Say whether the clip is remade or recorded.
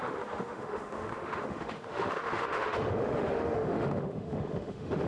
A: remade